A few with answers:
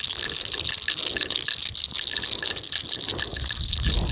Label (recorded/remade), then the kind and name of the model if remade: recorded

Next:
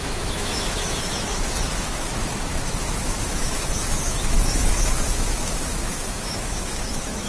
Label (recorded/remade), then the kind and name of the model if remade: remade, autoencoder, DAC-VAE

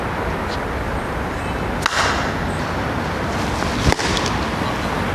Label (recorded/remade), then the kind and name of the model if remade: recorded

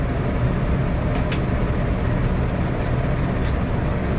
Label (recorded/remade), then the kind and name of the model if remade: recorded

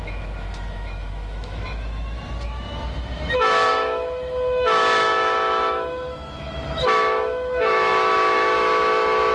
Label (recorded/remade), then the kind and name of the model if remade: remade, autoencoder, DAC-VAE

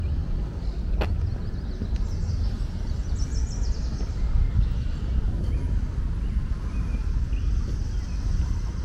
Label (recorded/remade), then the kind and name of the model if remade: recorded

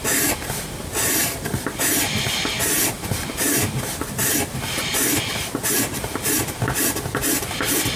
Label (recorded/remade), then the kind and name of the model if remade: recorded